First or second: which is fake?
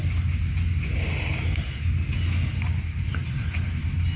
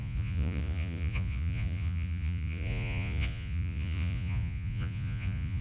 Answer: second